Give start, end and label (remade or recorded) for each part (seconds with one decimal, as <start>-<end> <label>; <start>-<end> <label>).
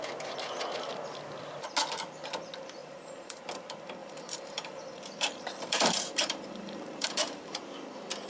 0.0-2.8 recorded; 2.8-3.4 remade; 3.4-4.0 recorded; 4.0-7.6 remade; 7.6-8.3 recorded